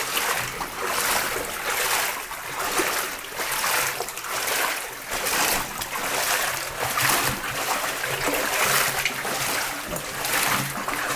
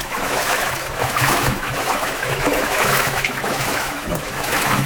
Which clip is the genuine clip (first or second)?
first